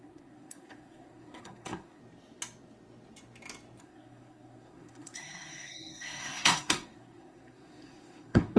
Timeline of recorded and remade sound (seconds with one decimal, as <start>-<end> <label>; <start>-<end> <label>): 0.0-2.0 remade; 2.0-3.8 recorded; 3.8-8.6 remade